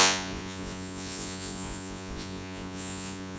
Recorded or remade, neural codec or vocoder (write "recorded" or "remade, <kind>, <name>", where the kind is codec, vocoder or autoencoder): remade, vocoder, Vocos